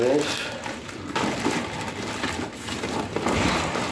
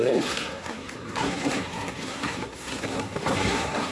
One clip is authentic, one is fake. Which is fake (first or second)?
second